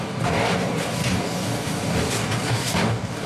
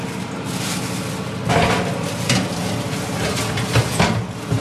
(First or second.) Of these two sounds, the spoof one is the first